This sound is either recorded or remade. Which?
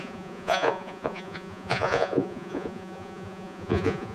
remade